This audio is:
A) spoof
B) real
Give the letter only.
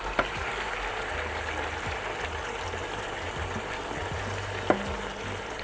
B